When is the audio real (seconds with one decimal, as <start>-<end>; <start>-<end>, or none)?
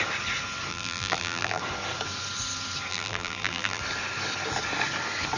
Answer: 0.0-0.7; 1.6-2.9; 3.8-5.4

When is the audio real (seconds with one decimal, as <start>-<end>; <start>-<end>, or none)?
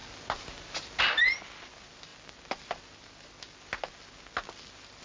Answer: 0.0-5.0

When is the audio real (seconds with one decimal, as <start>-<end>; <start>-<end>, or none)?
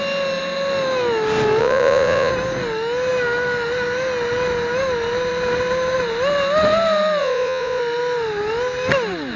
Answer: 0.0-1.6; 2.3-7.2; 7.8-9.4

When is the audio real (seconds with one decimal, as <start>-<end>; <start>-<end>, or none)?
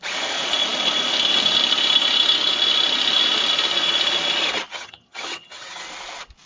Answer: 0.0-4.7; 5.8-6.5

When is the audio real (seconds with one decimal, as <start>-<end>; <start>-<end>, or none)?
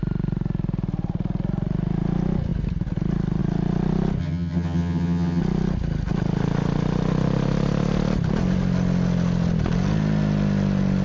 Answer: 0.0-4.2; 5.4-11.0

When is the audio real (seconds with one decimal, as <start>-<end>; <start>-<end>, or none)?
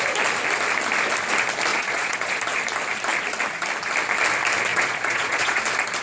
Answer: 0.0-1.7; 2.4-4.7; 5.6-6.0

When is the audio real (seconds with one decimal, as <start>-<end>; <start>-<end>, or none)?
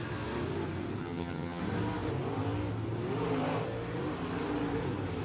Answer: 0.0-1.0; 1.6-5.2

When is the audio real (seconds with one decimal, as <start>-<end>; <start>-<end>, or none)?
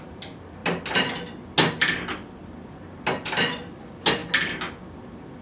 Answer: 0.0-5.4